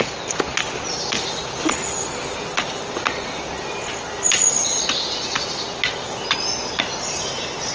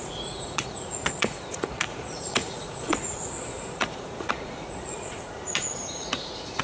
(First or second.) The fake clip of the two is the second